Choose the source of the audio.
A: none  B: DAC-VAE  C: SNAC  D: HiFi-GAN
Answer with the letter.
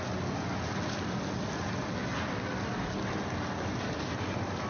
A